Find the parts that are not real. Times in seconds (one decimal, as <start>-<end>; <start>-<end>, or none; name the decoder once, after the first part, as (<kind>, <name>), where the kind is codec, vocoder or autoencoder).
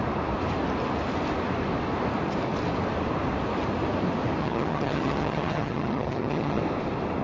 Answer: 4.4-6.6 (vocoder, HiFi-GAN)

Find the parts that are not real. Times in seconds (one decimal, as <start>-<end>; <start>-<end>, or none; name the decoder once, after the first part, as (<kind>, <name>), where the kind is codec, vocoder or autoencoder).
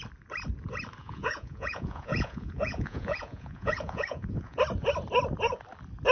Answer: 1.0-4.6 (vocoder, Vocos)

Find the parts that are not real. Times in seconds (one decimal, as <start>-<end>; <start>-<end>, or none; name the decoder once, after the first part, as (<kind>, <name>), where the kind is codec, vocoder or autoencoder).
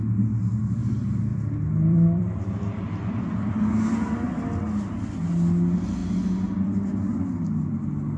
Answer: 1.3-3.7 (vocoder, BigVGAN v2)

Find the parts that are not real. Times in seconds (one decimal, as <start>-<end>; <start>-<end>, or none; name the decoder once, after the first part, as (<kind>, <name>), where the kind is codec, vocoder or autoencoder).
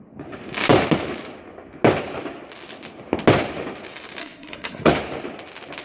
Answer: 4.2-4.9 (codec, SNAC)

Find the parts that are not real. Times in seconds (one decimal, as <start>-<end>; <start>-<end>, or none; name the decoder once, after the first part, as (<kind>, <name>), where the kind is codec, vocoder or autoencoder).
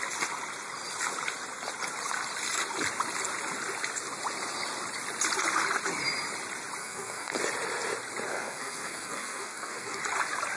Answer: 6.8-7.4 (codec, SNAC); 8.3-10.0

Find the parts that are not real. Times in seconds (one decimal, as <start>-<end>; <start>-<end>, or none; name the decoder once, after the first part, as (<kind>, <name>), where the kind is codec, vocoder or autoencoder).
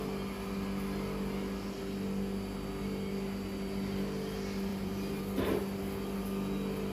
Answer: 4.7-5.2 (vocoder, BigVGAN v2)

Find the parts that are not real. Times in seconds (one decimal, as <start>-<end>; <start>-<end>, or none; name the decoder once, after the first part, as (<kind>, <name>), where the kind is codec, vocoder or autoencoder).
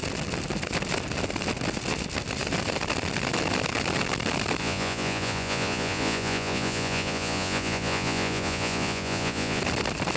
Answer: 4.6-9.6 (vocoder, Vocos)